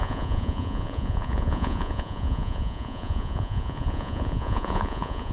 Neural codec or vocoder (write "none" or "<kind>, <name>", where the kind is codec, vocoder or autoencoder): vocoder, Vocos